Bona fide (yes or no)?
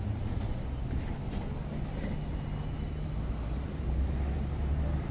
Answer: yes